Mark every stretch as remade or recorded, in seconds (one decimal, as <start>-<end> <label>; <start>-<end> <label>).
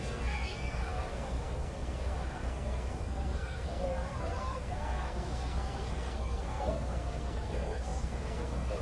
0.0-8.8 remade